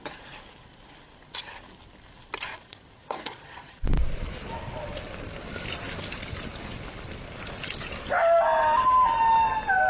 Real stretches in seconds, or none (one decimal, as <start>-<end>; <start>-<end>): 0.0-2.5; 4.2-9.9